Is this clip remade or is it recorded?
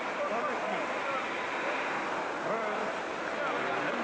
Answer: recorded